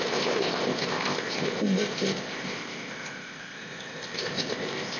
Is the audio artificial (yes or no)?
yes